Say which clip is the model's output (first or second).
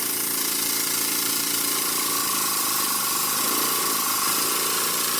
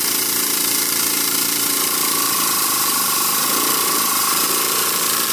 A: second